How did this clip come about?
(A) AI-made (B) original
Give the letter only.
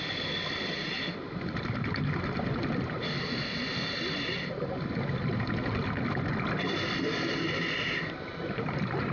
B